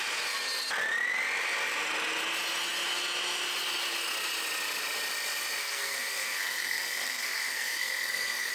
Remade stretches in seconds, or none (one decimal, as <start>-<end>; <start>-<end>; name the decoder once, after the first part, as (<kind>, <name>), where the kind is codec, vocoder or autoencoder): 5.6-8.5 (codec, SNAC)